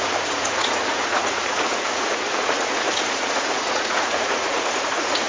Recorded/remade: remade